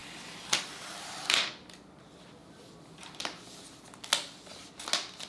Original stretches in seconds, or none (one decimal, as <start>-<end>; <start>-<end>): 1.5-2.4; 4.1-5.3